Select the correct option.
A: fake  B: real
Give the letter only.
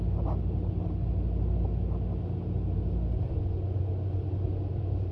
B